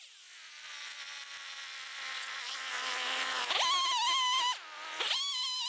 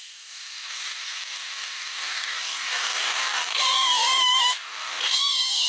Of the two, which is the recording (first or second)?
first